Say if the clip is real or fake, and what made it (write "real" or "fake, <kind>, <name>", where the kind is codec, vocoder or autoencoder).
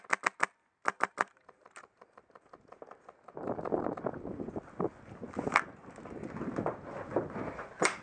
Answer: real